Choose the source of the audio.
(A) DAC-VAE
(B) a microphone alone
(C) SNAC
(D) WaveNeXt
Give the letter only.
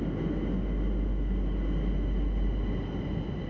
B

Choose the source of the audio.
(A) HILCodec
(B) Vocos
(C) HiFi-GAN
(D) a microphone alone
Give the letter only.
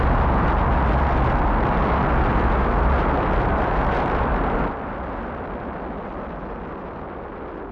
D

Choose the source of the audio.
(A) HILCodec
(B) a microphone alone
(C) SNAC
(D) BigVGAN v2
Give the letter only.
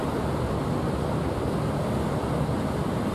B